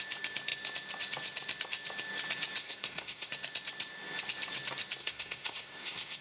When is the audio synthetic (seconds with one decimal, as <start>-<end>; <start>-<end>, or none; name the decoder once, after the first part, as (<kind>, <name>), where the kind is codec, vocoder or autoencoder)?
2.6-3.3 (codec, SNAC); 5.0-6.2